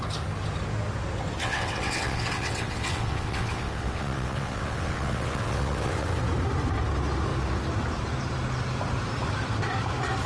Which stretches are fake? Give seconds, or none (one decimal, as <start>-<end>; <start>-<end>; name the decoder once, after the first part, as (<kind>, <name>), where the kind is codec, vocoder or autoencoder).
1.4-6.2 (vocoder, WaveNeXt)